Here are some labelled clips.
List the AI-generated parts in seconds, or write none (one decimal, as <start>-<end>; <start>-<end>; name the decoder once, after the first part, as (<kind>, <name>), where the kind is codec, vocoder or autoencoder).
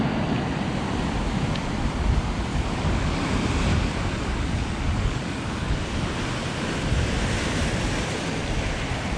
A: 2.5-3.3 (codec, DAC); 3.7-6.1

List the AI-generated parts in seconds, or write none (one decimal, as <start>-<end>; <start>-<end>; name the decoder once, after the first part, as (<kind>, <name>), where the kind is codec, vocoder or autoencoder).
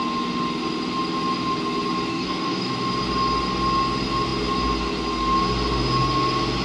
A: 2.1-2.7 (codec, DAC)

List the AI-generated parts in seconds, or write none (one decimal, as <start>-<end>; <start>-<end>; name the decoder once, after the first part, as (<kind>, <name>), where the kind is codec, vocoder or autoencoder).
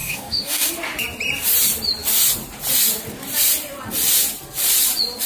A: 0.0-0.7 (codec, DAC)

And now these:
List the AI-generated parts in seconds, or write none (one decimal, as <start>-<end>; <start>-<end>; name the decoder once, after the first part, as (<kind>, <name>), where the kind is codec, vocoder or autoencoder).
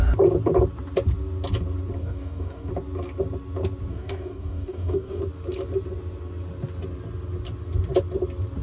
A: 2.0-2.7 (codec, DAC); 3.9-5.2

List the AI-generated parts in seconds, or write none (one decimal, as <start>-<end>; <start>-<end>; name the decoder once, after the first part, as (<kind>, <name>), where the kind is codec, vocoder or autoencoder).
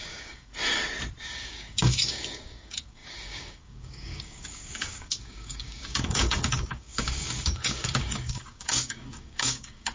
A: 0.0-0.5 (codec, DAC); 1.2-9.9